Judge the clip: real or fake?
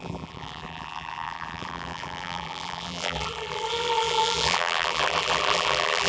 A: fake